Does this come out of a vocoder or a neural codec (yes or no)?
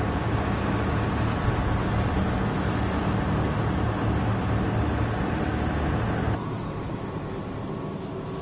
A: no